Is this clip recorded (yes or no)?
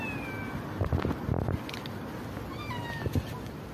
yes